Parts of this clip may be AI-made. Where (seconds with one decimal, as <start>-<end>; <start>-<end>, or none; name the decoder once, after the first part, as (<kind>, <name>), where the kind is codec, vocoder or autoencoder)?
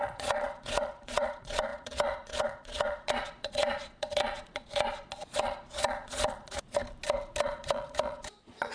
0.0-6.8 (vocoder, Vocos); 7.4-8.7